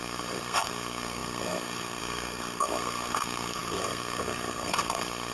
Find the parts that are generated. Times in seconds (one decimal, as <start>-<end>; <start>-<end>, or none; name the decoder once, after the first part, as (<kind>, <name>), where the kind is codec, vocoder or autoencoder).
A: 0.0-5.3 (codec, SNAC)